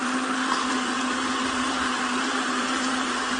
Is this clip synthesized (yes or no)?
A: yes